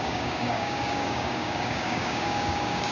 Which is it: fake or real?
fake